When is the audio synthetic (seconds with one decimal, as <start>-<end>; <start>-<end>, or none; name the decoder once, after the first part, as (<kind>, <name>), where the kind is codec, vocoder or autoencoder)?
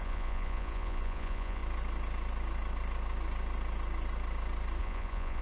0.0-1.6 (vocoder, Vocos); 4.8-5.4